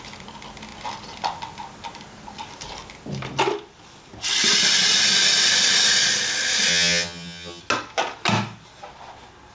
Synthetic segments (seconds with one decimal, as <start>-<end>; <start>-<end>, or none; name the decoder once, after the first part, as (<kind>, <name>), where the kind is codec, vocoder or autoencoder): 6.7-7.6 (vocoder, HiFi-GAN)